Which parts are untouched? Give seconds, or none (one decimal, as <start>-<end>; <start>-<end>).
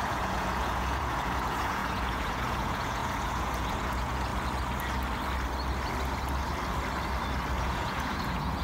4.3-7.6